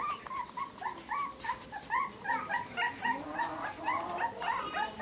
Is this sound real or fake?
real